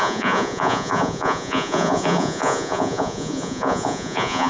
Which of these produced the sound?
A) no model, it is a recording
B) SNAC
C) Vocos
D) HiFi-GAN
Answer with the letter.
C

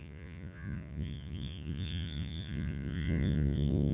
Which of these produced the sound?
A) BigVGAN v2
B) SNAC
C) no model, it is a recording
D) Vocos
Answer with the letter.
D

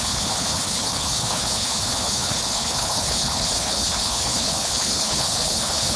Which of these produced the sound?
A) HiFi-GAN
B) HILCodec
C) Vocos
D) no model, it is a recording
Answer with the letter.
B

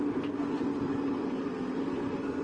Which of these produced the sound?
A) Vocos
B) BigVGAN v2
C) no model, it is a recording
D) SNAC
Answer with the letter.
C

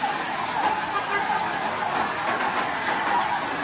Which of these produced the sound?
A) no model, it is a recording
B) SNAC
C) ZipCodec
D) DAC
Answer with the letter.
A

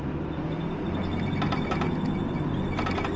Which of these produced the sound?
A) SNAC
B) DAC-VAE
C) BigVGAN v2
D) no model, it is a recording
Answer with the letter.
D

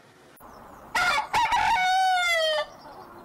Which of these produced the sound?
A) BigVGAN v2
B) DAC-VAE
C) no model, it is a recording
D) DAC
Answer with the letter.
A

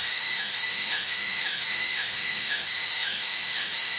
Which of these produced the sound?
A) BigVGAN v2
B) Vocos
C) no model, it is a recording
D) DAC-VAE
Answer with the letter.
D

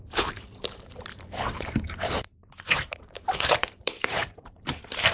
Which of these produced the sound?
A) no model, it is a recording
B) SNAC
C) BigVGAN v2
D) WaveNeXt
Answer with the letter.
C